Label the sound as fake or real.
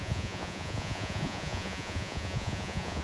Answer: fake